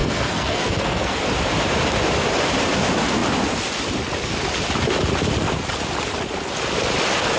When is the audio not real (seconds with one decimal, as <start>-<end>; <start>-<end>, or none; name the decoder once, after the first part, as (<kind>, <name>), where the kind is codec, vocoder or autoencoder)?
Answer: 0.0-1.2 (codec, SNAC)